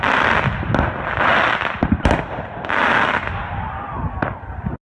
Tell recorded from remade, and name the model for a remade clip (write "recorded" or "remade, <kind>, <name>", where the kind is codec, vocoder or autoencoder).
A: recorded